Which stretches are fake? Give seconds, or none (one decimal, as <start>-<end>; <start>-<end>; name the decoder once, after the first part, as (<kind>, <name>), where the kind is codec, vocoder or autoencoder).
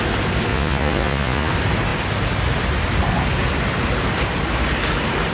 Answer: 0.5-1.5 (vocoder, Vocos)